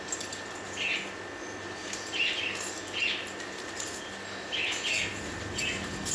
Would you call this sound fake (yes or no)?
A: no